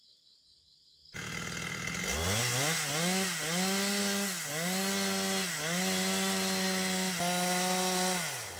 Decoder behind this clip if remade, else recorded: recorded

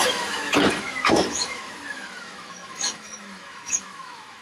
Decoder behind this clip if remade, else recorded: remade, autoencoder, DAC-VAE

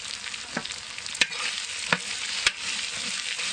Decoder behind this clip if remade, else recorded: recorded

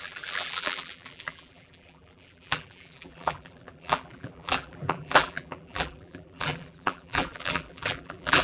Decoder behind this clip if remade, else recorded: remade, vocoder, BigVGAN v2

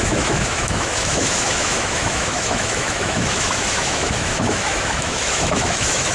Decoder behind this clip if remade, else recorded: remade, autoencoder, DAC-VAE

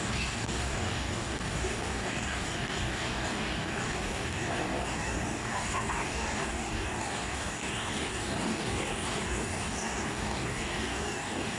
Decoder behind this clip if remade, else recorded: remade, codec, DAC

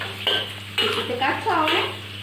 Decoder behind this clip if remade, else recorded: recorded